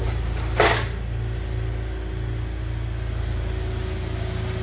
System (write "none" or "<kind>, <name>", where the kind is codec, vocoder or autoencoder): none